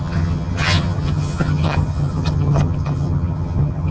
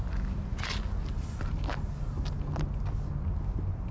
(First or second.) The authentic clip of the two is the second